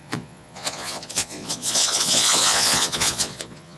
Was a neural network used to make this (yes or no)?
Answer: yes